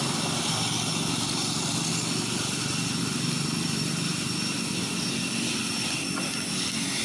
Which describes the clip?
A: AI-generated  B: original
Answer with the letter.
B